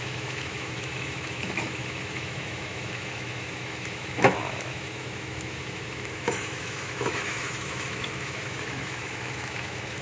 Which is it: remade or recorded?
remade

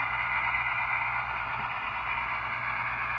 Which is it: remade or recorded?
recorded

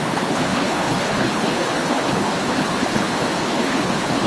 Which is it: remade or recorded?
remade